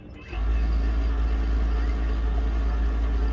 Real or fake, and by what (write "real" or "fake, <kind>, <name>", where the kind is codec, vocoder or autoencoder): real